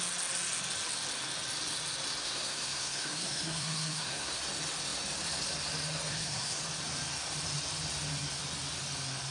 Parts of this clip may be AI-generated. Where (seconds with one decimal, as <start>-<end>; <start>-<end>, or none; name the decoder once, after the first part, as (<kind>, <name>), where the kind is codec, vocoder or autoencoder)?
2.2-4.4 (codec, SNAC); 6.1-6.6